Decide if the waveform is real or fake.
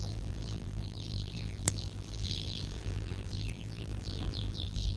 fake